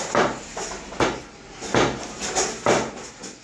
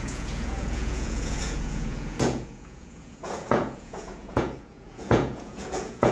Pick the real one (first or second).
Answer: first